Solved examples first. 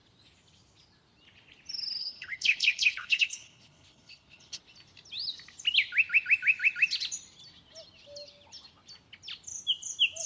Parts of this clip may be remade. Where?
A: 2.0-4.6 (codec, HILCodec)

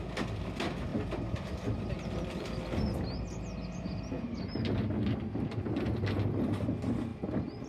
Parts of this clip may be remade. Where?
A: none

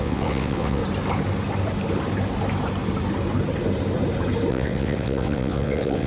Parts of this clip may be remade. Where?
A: 0.0-0.8 (vocoder, WaveNeXt); 4.5-6.1